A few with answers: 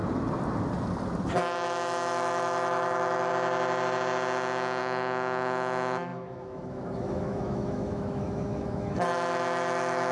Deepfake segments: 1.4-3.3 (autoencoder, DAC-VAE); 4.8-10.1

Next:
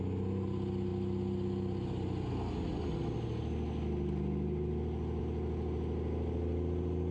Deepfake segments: none

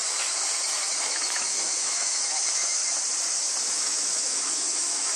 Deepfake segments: 0.0-2.8 (autoencoder, DAC-VAE); 3.6-5.2

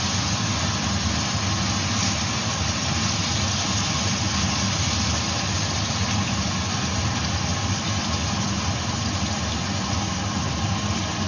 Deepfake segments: none

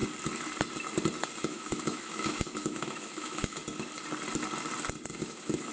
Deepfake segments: 1.4-3.6 (autoencoder, DAC-VAE); 5.2-5.7

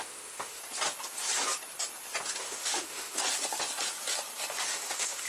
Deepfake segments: 0.0-0.6 (autoencoder, DAC-VAE); 2.4-3.2; 4.7-5.3

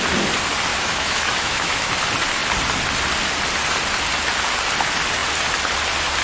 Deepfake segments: 0.7-1.9 (autoencoder, DAC-VAE)